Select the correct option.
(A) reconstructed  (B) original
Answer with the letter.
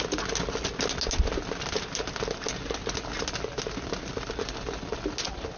B